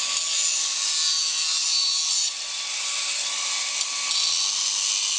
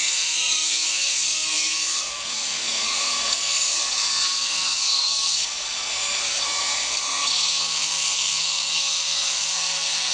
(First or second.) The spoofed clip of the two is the second